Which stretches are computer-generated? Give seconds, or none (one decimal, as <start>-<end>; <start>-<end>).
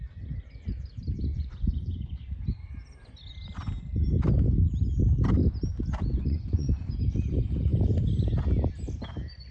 1.3-2.2; 6.1-6.8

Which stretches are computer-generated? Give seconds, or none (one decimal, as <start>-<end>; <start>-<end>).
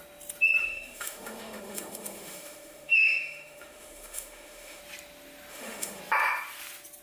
0.6-4.8; 5.5-6.0